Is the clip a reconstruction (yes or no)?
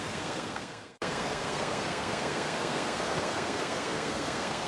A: yes